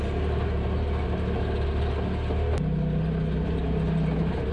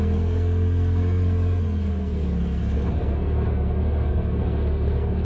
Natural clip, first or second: first